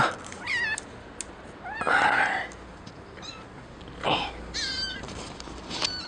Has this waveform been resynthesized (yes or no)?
no